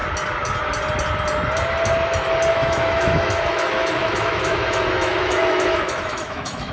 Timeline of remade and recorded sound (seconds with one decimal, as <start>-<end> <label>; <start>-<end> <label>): 0.0-2.5 recorded; 2.5-6.7 remade